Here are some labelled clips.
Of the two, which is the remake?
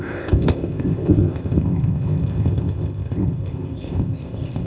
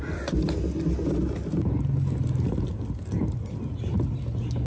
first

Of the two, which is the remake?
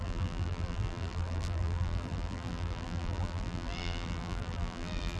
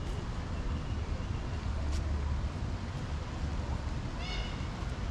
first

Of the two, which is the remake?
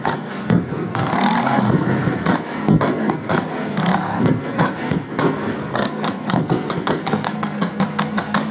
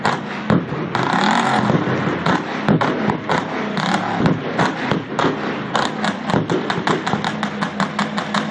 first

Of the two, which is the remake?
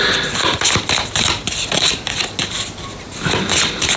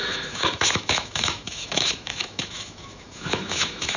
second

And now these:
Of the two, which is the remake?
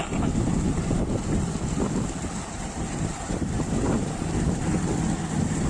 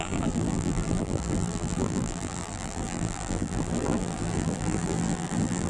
second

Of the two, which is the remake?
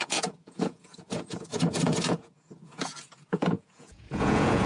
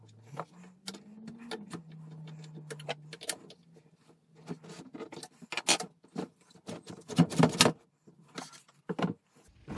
first